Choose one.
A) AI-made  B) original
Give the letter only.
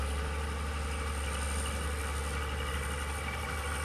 B